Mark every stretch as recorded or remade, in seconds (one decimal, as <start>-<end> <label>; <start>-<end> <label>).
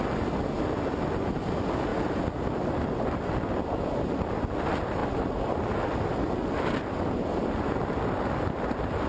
0.0-9.1 recorded